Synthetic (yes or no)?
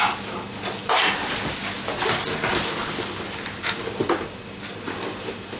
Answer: no